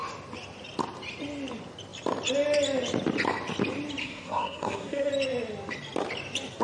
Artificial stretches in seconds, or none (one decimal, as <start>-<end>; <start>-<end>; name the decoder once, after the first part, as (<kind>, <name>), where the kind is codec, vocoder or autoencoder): 4.0-5.1 (codec, SNAC)